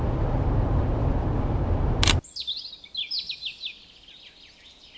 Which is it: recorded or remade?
recorded